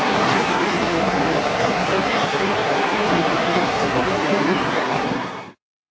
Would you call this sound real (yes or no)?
no